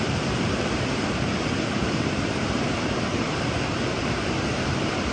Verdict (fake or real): fake